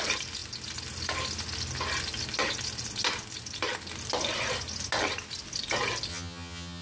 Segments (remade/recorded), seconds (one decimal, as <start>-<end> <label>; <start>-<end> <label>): 0.0-6.1 recorded; 6.1-6.8 remade

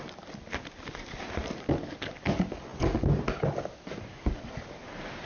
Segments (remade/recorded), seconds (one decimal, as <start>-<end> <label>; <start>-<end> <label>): 0.0-5.3 recorded